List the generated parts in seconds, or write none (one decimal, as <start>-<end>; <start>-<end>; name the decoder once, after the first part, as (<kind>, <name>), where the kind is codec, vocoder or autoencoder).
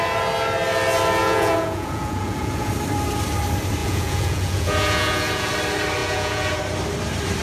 1.2-2.7 (vocoder, Vocos); 3.8-5.5; 6.0-6.6